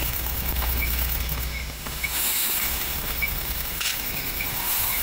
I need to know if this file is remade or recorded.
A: remade